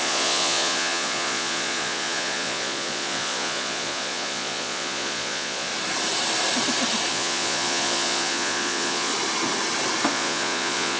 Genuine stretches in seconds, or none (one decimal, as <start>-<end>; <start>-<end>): 5.7-7.1; 9.1-10.1